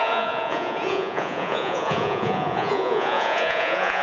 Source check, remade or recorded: remade